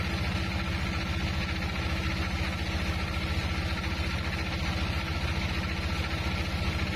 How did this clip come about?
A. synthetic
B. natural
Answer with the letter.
B